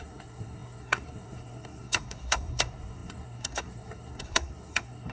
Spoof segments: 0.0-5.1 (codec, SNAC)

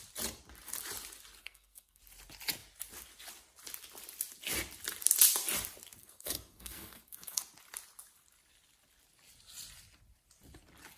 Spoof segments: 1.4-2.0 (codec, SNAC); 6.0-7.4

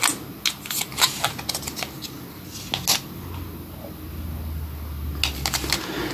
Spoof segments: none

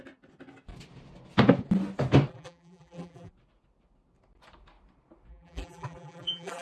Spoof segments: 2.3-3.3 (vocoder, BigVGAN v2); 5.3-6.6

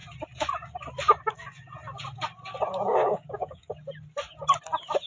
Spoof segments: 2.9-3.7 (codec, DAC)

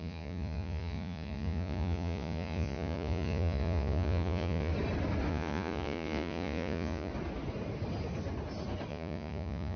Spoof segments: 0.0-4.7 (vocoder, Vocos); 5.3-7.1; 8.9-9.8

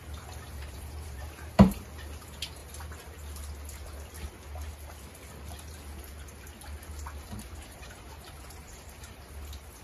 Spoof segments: 0.0-2.6 (vocoder, BigVGAN v2); 7.2-9.8

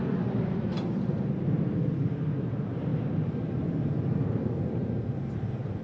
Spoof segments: 0.0-2.9 (vocoder, BigVGAN v2); 5.0-5.8